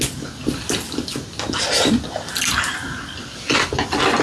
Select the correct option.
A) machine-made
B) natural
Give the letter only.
B